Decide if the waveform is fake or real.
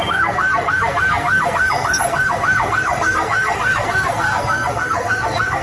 fake